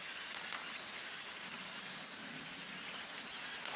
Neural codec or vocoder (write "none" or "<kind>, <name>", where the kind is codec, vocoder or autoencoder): none